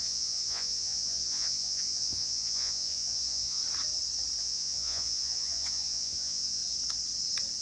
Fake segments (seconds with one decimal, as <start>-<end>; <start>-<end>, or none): 0.0-3.6; 4.4-6.6